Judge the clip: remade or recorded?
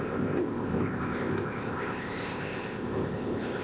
remade